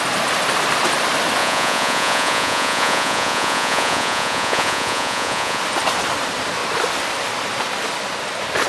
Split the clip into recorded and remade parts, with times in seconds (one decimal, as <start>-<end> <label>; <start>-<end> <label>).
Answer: 0.0-1.4 recorded; 1.4-5.6 remade; 5.6-8.7 recorded